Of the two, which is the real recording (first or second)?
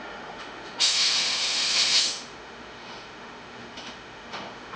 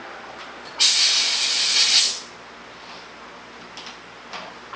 second